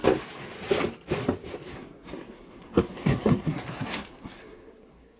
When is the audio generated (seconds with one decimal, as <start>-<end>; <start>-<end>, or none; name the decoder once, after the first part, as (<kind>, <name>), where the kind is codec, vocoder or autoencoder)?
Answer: 1.7-5.2 (codec, SNAC)

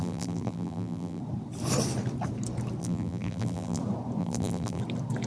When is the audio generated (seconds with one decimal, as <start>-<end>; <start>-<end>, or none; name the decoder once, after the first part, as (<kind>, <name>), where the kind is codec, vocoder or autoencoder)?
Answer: 0.0-1.2 (vocoder, BigVGAN v2); 2.8-3.8; 4.2-4.8

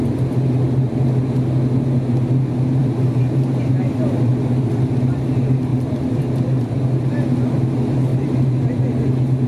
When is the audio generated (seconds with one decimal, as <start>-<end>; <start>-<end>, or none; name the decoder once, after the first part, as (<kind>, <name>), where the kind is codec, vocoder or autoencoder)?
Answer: 2.8-4.3 (vocoder, BigVGAN v2); 5.7-6.2; 8.1-8.7

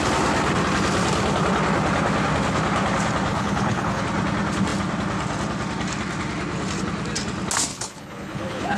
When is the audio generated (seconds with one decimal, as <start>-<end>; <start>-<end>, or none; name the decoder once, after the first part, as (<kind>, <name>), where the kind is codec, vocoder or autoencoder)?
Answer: 3.3-4.0 (codec, HILCodec); 7.7-8.8

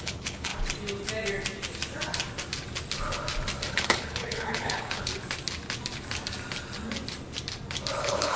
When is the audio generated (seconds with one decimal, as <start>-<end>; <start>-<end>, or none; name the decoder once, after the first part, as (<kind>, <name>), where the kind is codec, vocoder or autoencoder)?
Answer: 0.0-0.5 (codec, HILCodec); 3.7-5.1; 8.0-8.4

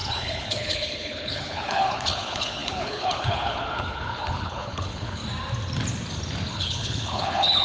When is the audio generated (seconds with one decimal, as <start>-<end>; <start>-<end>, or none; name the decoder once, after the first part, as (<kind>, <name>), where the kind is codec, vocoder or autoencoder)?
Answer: 0.0-5.2 (codec, HILCodec); 6.5-7.6

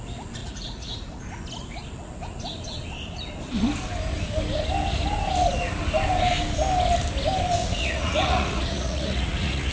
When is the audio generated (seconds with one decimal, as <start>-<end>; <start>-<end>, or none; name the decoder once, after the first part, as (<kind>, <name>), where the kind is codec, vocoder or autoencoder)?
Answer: 0.4-1.2 (vocoder, Vocos); 7.6-9.7

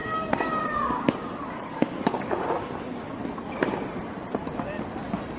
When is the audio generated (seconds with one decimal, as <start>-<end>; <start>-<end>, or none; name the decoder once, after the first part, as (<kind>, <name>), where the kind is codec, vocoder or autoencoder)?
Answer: 0.0-3.2 (codec, DAC)